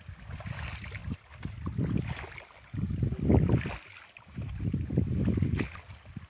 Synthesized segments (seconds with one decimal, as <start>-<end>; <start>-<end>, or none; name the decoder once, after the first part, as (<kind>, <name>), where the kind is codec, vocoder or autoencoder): none